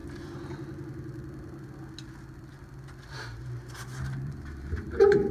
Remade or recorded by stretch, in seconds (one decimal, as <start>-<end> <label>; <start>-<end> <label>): 0.0-3.2 recorded; 3.2-5.3 remade